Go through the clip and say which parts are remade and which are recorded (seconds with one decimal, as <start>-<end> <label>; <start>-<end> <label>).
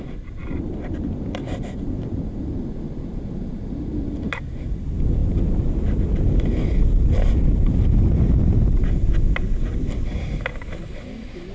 0.0-11.5 recorded